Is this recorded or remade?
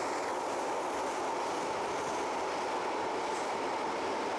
recorded